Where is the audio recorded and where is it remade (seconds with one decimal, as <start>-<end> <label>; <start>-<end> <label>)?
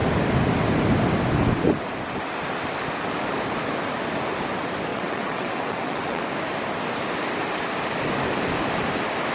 0.0-4.9 recorded; 4.9-6.2 remade; 6.2-9.3 recorded